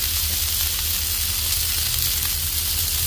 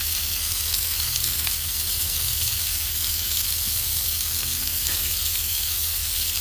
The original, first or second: first